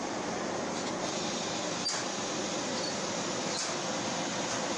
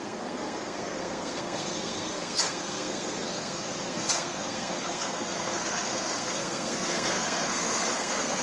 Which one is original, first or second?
first